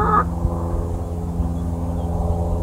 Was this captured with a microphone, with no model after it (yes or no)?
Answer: yes